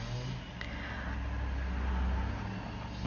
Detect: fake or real real